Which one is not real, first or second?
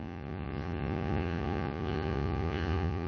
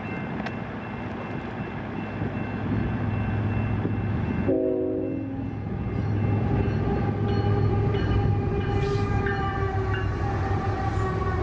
first